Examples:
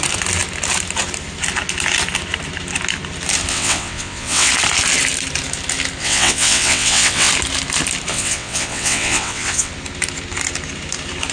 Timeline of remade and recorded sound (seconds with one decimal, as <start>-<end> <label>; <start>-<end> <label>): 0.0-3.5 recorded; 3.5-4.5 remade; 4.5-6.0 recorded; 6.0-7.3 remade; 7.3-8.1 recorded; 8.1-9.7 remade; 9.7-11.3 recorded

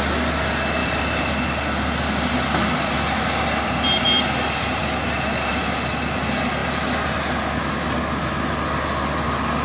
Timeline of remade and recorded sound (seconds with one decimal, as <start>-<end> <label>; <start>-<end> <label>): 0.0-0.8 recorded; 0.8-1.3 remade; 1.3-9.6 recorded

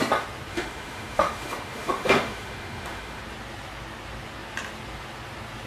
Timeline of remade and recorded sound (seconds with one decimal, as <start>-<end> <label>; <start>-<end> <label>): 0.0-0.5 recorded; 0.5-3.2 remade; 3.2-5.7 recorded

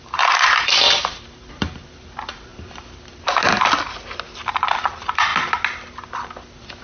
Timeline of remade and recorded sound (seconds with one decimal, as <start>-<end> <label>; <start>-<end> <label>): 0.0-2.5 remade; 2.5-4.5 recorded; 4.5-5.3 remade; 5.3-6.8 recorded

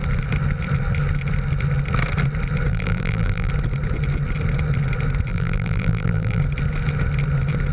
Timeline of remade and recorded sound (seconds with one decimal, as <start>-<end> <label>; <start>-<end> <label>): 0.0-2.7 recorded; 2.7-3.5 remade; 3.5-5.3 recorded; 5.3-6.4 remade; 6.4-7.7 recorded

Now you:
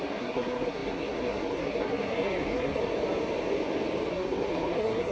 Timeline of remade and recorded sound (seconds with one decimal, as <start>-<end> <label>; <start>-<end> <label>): 0.0-2.8 remade; 2.8-4.1 recorded; 4.1-5.1 remade

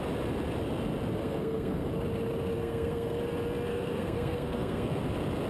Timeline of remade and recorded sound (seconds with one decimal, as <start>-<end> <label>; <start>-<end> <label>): 0.0-1.2 recorded; 1.2-1.9 remade; 1.9-2.5 recorded; 2.5-3.2 remade; 3.2-3.7 recorded; 3.7-5.0 remade; 5.0-5.5 recorded